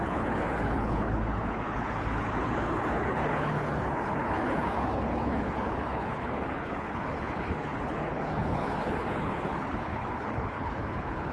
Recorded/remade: remade